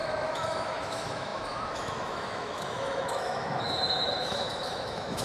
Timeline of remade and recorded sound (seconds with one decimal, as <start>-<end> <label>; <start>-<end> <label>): 0.0-5.2 remade